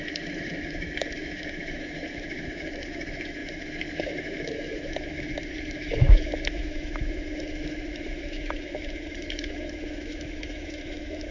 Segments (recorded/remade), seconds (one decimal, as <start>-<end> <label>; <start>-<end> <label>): 0.0-11.3 remade